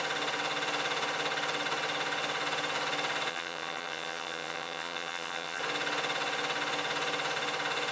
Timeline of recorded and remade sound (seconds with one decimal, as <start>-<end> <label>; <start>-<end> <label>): 0.0-3.3 recorded; 3.3-5.6 remade; 5.6-7.9 recorded